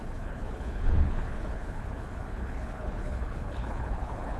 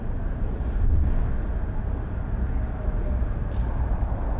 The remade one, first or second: first